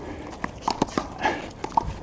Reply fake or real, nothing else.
real